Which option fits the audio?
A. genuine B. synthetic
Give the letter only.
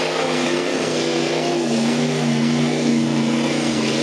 B